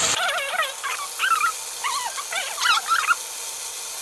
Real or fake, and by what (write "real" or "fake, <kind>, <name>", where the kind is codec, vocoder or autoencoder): real